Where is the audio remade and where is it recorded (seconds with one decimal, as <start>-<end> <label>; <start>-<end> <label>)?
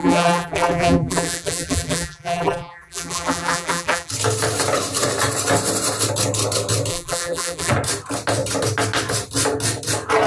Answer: 0.0-4.1 remade; 4.1-6.9 recorded; 6.9-7.7 remade; 7.7-10.3 recorded